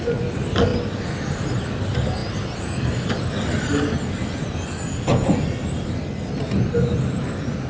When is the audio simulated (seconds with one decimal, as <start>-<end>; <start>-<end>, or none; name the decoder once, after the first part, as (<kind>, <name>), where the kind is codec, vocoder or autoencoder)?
none